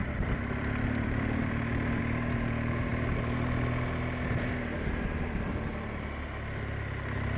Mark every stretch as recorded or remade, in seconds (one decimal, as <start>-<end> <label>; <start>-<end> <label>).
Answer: 0.0-2.0 remade; 2.0-7.4 recorded